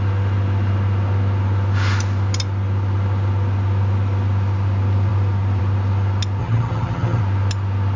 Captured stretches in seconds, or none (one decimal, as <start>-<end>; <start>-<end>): 0.0-6.4; 7.2-8.0